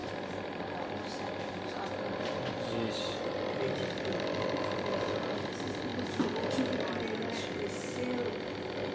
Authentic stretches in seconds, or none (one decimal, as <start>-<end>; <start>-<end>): 1.5-5.9; 6.9-8.9